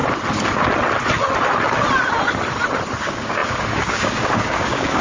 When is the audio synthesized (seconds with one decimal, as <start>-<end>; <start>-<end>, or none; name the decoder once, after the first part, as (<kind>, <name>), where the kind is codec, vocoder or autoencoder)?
3.0-5.0 (codec, DAC)

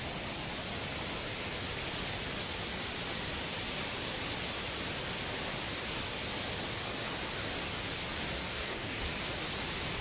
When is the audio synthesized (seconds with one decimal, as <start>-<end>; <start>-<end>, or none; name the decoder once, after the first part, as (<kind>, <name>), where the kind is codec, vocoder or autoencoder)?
8.4-9.0 (codec, DAC)

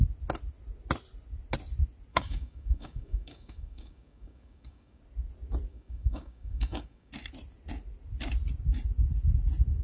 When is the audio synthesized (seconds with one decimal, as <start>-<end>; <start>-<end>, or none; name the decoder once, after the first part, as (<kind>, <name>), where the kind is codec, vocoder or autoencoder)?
2.1-5.0 (codec, DAC); 5.7-7.1

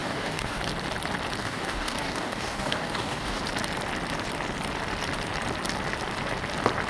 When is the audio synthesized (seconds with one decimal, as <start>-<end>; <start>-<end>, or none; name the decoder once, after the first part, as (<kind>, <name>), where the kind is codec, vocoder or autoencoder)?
0.0-0.6 (codec, DAC); 1.4-3.4

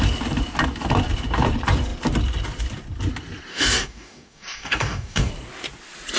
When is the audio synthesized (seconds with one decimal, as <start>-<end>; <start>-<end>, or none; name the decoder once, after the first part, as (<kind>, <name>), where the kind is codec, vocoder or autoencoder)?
3.5-5.3 (codec, DAC)

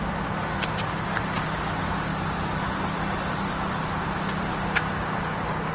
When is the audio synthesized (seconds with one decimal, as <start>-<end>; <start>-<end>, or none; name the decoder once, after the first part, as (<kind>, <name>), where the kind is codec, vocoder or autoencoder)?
none

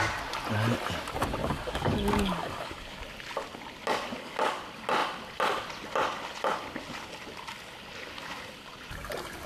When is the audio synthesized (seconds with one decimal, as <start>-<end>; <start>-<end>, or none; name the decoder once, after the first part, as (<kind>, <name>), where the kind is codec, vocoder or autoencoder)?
1.4-3.0 (codec, DAC); 4.1-4.6